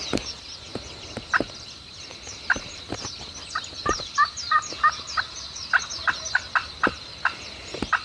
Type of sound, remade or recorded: recorded